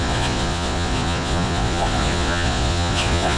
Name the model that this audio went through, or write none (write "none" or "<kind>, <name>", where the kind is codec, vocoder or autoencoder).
vocoder, Vocos